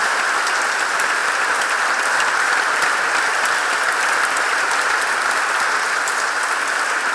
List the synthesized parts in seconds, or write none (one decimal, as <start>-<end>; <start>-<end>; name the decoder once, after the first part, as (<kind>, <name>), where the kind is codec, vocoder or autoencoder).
1.2-5.0 (vocoder, BigVGAN v2)